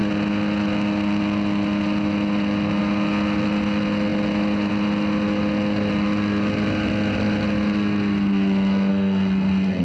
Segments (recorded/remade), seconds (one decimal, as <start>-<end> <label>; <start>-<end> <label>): 0.0-8.9 recorded; 8.9-9.8 remade